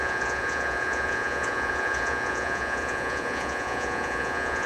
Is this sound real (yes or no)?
no